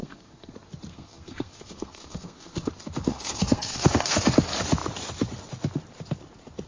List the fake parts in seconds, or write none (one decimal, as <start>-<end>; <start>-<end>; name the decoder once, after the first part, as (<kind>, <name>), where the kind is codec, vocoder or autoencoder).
0.0-0.5 (codec, SNAC); 0.9-2.7; 3.1-4.2